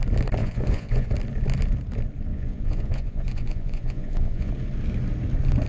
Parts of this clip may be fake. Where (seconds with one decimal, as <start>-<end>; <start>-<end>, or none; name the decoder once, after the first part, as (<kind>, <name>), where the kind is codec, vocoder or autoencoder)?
0.4-1.1 (vocoder, Vocos); 2.3-4.5